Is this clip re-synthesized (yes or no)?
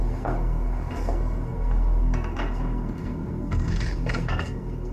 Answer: yes